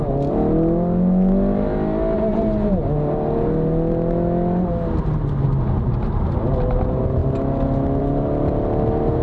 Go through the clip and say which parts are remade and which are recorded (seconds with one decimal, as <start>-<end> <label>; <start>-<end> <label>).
0.0-9.2 recorded